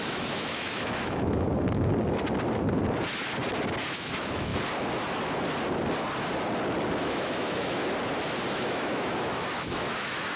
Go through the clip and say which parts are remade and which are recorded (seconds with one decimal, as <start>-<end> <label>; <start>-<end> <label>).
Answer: 0.0-1.5 remade; 1.5-3.8 recorded; 3.8-4.5 remade; 4.5-7.0 recorded; 7.0-7.8 remade; 7.8-8.5 recorded; 8.5-10.4 remade

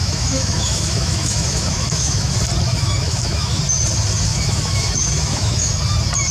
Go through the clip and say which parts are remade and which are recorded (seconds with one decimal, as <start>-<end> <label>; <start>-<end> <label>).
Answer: 0.0-2.3 remade; 2.3-2.7 recorded; 2.7-3.6 remade; 3.6-4.3 recorded; 4.3-5.7 remade; 5.7-6.3 recorded

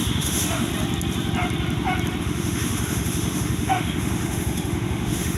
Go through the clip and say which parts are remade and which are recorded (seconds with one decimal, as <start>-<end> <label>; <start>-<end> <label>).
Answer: 0.0-0.7 remade; 0.7-2.2 recorded; 2.2-5.4 remade

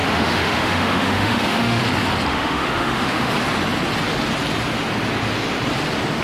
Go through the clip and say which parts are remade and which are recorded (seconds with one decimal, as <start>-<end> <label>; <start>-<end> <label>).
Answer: 0.0-1.8 remade; 1.8-2.3 recorded; 2.3-3.3 remade; 3.3-6.2 recorded

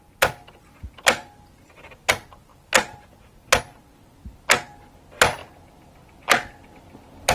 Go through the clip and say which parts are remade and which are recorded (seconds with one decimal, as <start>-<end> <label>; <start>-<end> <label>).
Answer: 0.0-7.3 recorded

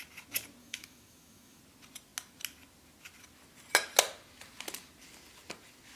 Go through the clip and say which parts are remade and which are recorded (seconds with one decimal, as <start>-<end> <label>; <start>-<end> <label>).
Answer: 0.0-0.6 recorded; 0.6-1.6 remade; 1.6-6.0 recorded

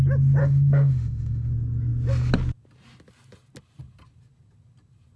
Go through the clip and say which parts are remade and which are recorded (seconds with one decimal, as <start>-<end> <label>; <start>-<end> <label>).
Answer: 0.0-0.4 recorded; 0.4-1.5 remade; 1.5-5.2 recorded